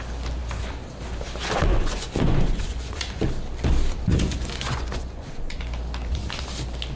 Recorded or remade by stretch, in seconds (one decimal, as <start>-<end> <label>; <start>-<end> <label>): 0.0-1.7 recorded; 1.7-3.2 remade; 3.2-4.1 recorded; 4.1-5.6 remade; 5.6-7.0 recorded